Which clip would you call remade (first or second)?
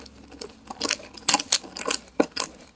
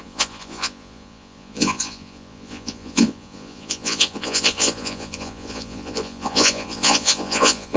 second